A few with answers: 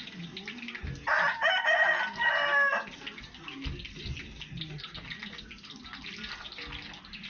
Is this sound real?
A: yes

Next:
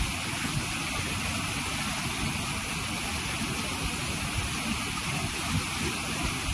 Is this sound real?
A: yes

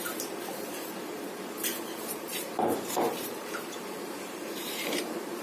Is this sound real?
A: no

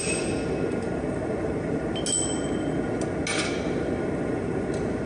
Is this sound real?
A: yes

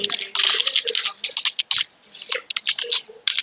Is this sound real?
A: yes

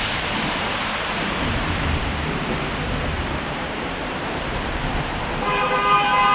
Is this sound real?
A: no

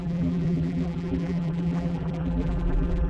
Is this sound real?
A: no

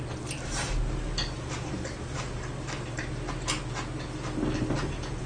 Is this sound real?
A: yes